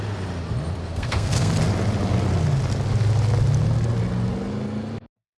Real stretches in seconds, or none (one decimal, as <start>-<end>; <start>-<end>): 0.0-0.8; 1.5-5.4